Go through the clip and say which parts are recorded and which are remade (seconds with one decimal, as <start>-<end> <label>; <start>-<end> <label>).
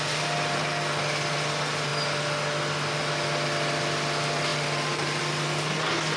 0.0-4.5 recorded; 4.5-5.2 remade; 5.2-6.2 recorded